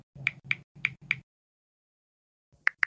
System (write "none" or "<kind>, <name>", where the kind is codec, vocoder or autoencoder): none